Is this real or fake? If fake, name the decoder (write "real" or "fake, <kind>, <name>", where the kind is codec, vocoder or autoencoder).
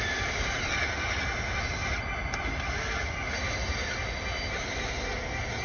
real